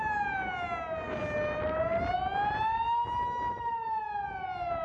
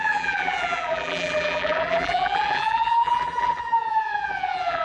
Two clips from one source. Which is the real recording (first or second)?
first